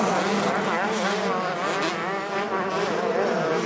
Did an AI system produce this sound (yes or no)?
no